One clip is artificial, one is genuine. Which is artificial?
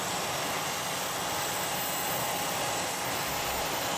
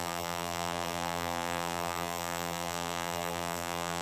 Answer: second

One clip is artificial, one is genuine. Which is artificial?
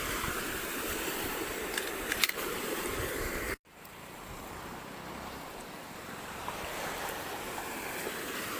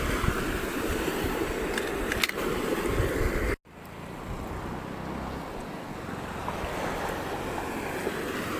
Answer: first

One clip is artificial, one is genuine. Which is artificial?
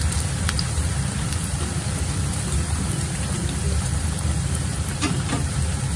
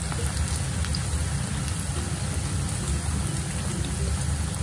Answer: first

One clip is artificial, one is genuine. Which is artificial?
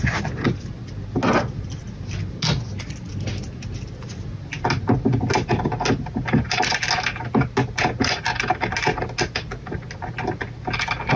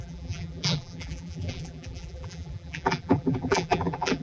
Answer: second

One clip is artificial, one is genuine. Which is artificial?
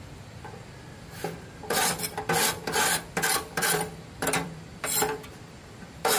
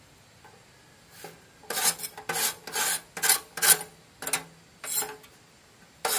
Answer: first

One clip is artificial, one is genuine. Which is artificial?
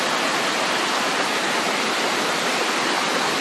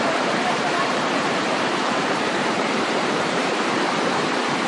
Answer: second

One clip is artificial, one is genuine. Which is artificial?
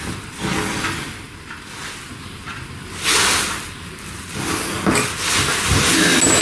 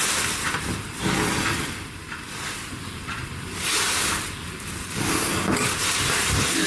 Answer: second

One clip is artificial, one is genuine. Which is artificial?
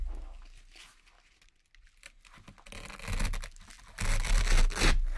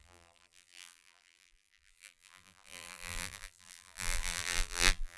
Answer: second